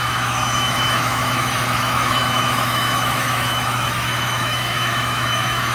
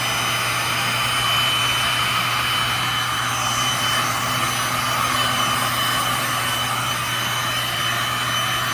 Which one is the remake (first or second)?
first